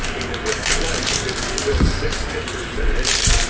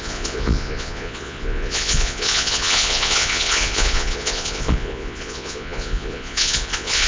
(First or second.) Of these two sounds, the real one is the first